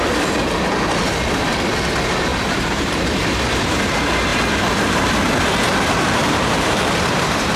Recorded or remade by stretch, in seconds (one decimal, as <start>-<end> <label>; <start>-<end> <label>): 0.0-2.3 recorded; 2.3-3.5 remade; 3.5-4.3 recorded; 4.3-5.3 remade; 5.3-6.2 recorded; 6.2-7.6 remade